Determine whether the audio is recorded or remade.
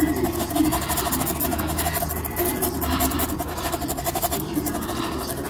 recorded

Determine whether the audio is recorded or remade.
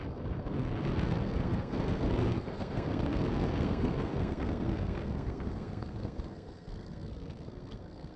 remade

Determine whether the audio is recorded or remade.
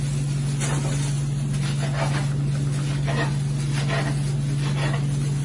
recorded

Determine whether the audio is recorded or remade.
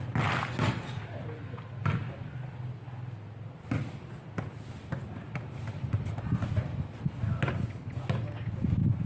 recorded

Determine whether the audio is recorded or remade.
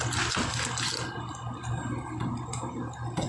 recorded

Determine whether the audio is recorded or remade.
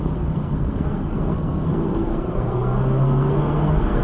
remade